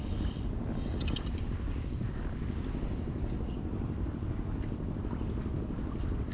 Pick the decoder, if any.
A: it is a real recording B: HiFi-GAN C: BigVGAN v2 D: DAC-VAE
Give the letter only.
A